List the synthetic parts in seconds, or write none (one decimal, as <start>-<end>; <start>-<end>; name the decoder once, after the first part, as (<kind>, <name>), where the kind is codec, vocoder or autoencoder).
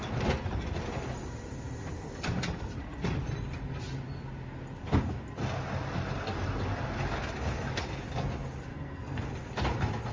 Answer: 8.7-9.3 (codec, SNAC)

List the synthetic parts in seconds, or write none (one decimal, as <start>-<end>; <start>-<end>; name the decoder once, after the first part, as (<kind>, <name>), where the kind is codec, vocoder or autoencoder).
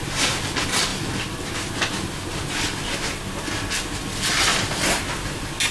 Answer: none